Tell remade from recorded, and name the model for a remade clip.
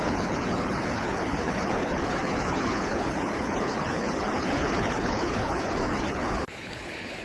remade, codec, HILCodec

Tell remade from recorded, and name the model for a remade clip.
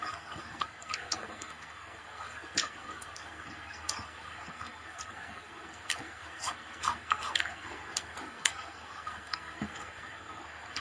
remade, codec, SNAC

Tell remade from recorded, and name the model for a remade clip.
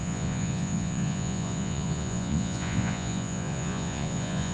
remade, vocoder, Vocos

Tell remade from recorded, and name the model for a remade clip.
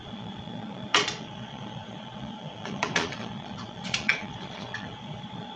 remade, vocoder, Vocos